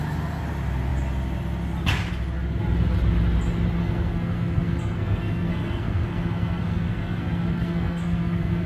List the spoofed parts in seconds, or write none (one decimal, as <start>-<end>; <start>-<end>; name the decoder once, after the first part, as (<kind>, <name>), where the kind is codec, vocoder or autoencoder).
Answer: 3.8-8.7 (codec, SNAC)